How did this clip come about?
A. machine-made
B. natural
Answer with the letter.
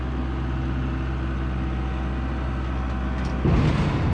B